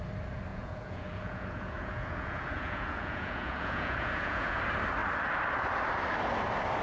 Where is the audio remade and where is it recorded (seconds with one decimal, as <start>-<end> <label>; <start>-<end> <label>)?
0.0-0.5 recorded; 0.5-4.6 remade; 4.6-6.8 recorded